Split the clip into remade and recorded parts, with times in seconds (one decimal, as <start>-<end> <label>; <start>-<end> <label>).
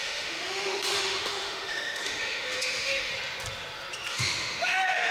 0.0-3.1 remade; 3.1-4.1 recorded; 4.1-5.1 remade